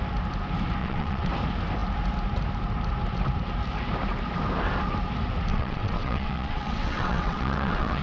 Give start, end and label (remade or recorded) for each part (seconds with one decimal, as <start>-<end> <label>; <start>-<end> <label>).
0.0-0.8 recorded; 0.8-1.3 remade; 1.3-5.5 recorded; 5.5-8.0 remade